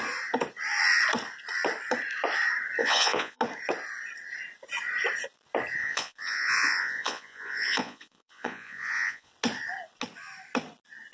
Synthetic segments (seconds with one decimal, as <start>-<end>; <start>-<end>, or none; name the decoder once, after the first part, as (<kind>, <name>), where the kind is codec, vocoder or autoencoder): 2.8-3.4 (vocoder, Vocos); 5.8-9.3

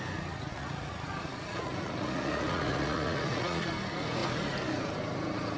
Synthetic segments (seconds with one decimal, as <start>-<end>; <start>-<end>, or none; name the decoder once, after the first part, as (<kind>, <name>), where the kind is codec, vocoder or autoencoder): 0.5-3.7 (vocoder, Vocos)

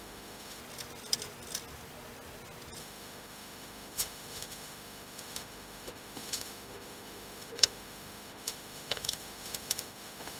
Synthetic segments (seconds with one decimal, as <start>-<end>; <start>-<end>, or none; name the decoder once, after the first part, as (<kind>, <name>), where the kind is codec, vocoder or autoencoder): 0.0-0.6 (autoencoder, DAC-VAE); 2.8-10.4

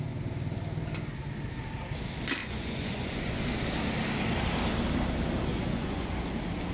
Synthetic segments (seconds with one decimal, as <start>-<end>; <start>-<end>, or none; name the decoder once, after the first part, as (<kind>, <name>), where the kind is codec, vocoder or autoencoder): 2.4-3.4 (vocoder, Vocos); 5.5-6.1

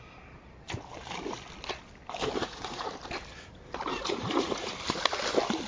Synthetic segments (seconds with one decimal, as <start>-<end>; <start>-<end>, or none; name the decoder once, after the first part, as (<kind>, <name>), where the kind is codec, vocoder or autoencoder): 2.4-2.9 (vocoder, Vocos); 3.9-4.7

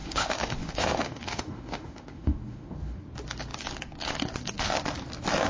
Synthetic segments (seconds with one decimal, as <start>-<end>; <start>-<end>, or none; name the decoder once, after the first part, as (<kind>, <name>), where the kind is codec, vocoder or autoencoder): 0.0-3.0 (autoencoder, DAC-VAE)

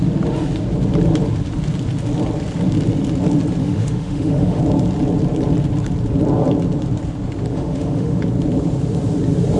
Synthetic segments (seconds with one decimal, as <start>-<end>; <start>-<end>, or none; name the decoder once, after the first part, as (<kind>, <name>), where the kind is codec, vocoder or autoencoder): 3.6-4.6 (autoencoder, DAC-VAE); 7.5-8.2